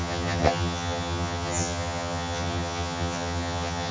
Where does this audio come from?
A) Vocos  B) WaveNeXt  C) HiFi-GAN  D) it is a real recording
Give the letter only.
C